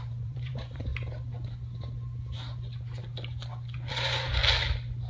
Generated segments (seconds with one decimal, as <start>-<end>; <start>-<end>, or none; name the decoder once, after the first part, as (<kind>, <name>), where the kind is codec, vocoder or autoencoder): 0.0-0.9 (vocoder, Vocos); 3.9-4.4